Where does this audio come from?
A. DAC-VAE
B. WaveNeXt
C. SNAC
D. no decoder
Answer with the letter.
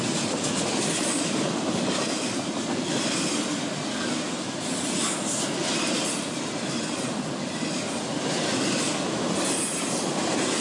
D